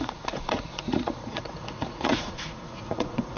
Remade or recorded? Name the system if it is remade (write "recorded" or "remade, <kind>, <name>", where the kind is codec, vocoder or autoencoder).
remade, vocoder, Vocos